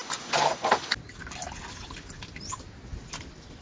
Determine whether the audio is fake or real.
real